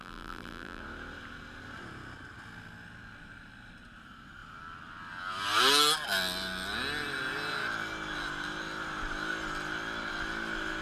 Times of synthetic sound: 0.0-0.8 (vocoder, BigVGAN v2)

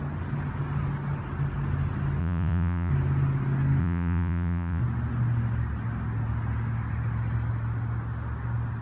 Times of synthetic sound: 2.2-2.9 (vocoder, Vocos); 3.8-4.8